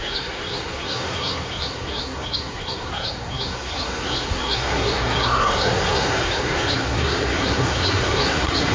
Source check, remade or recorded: remade